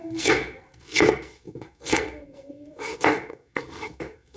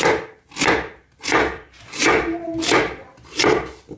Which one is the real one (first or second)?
second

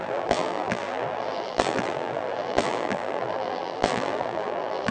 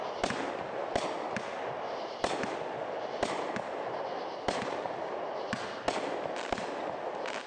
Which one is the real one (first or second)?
second